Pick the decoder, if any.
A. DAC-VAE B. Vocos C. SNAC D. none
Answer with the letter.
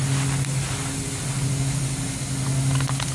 D